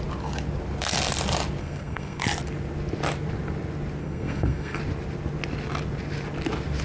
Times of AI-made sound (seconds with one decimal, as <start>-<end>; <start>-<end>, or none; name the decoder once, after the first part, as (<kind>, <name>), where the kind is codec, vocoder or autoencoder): 1.6-2.2 (codec, SNAC); 4.0-4.8